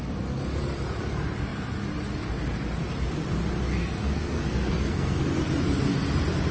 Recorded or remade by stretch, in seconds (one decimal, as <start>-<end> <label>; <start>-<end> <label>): 0.0-3.7 recorded; 3.7-5.2 remade; 5.2-6.5 recorded